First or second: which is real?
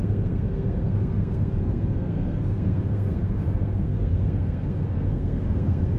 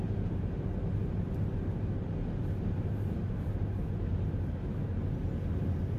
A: second